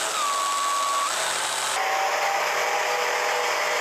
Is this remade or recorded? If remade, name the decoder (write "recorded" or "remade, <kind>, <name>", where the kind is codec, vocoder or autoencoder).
recorded